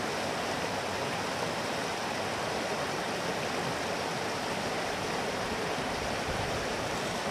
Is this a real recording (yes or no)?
no